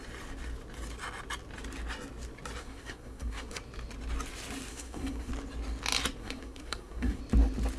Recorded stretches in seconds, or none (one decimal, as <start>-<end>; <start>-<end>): 0.0-2.6; 3.6-4.7; 5.3-6.2; 7.2-7.8